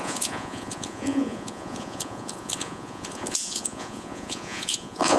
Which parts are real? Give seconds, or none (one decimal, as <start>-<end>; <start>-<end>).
none